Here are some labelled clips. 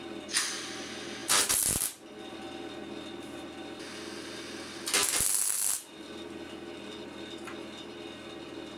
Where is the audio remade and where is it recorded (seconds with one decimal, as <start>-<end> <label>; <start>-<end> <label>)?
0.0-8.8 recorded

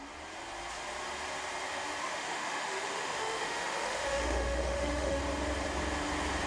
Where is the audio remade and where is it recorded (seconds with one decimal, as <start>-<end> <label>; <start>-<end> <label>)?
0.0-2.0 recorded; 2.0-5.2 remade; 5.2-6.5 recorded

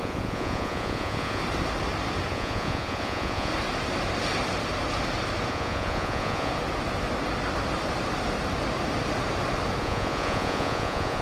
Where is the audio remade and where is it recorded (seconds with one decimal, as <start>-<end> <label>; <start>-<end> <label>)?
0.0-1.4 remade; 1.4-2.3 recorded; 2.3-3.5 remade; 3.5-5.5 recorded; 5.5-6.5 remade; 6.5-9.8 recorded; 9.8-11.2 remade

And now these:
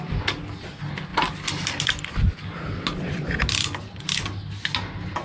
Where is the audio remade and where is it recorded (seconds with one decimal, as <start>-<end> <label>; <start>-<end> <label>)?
0.0-1.1 recorded; 1.1-1.9 remade; 1.9-5.2 recorded

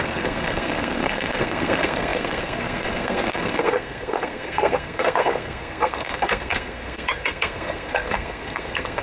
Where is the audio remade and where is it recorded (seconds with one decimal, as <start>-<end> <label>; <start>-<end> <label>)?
0.0-9.0 remade

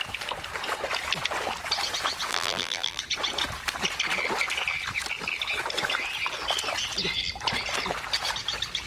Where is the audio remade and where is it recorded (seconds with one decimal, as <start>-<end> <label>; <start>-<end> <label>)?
0.0-2.3 recorded; 2.3-3.0 remade; 3.0-8.9 recorded

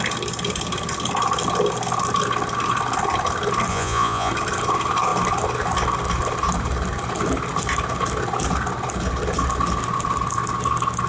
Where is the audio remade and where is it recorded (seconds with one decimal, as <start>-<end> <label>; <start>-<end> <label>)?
0.0-3.7 recorded; 3.7-4.3 remade; 4.3-11.1 recorded

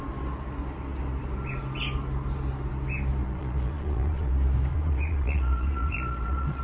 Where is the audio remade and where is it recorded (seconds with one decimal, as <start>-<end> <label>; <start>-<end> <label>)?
0.0-3.2 recorded; 3.2-4.3 remade; 4.3-4.7 recorded; 4.7-6.6 remade